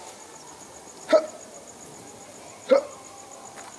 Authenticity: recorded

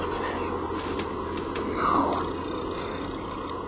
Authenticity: recorded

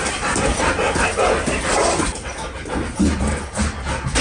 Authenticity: recorded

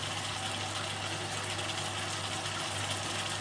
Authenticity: recorded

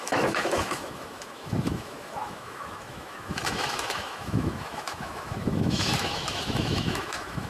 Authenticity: remade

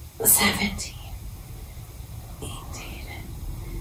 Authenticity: recorded